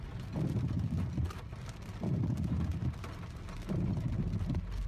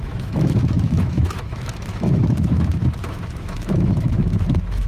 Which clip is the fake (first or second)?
second